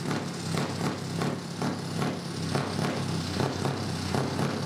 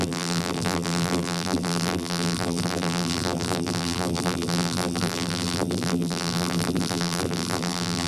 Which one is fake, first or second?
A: second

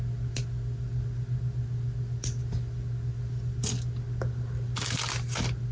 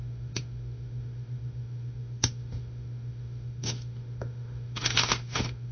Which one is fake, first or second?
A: second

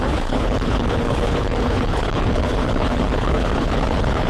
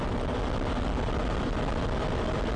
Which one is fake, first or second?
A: first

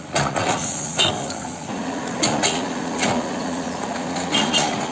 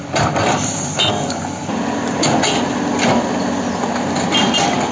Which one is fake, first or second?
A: first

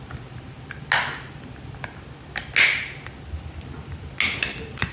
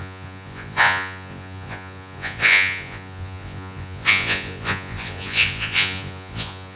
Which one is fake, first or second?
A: second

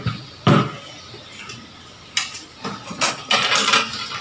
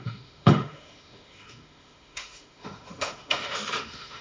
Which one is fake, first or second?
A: second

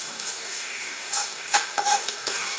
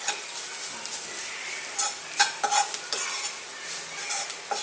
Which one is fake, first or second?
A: first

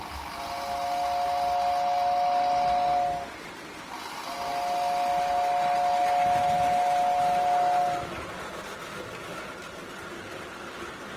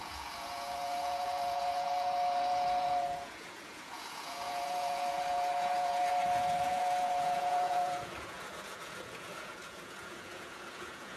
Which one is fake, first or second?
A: second